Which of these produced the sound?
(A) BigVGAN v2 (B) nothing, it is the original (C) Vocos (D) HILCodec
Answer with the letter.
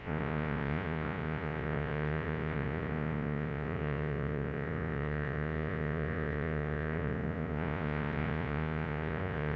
C